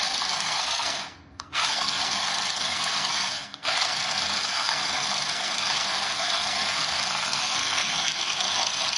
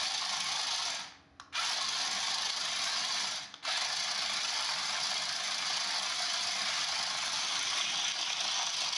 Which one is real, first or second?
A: second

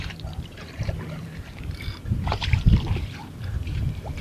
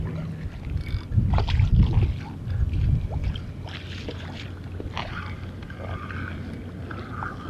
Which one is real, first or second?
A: second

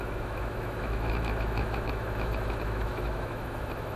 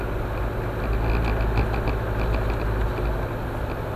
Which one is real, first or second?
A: second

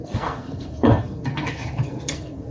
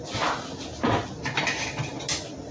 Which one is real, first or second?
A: second